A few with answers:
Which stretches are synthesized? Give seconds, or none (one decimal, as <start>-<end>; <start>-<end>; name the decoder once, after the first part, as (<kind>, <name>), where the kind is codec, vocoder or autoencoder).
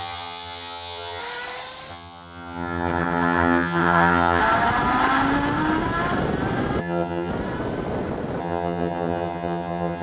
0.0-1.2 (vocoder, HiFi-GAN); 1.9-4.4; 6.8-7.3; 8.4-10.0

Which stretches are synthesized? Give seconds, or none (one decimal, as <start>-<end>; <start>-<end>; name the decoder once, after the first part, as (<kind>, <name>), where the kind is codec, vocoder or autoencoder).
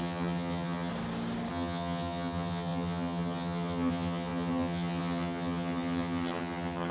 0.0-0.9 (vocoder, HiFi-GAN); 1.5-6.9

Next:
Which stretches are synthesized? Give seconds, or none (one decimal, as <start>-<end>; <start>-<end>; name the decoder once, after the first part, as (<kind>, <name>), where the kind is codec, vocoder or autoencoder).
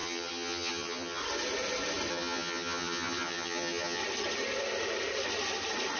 0.0-1.2 (vocoder, HiFi-GAN); 2.1-4.0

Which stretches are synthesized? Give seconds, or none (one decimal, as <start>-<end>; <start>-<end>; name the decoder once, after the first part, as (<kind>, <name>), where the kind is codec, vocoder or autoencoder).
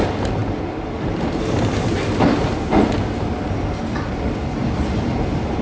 none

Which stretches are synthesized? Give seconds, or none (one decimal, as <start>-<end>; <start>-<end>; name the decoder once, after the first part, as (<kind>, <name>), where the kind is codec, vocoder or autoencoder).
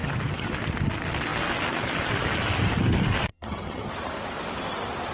0.0-0.5 (vocoder, HiFi-GAN); 3.3-3.9